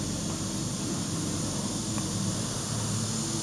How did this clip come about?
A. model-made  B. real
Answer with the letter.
B